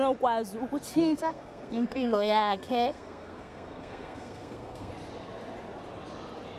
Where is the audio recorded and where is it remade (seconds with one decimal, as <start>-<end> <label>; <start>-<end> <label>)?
0.0-0.9 recorded; 0.9-4.9 remade; 4.9-6.6 recorded